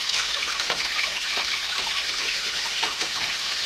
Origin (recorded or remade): remade